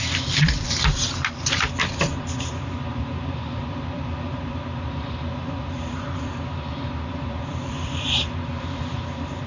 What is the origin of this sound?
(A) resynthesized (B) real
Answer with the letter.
A